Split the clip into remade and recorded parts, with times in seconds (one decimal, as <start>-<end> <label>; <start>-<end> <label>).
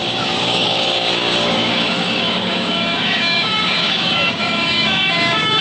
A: 0.0-5.6 remade